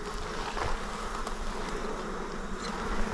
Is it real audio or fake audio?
real